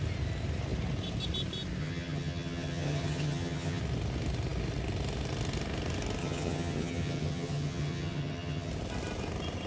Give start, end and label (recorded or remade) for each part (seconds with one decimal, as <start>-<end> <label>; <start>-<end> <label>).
0.0-1.8 recorded; 1.8-3.8 remade; 3.8-6.2 recorded; 6.2-8.7 remade; 8.7-9.7 recorded